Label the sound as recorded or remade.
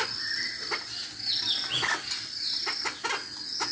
recorded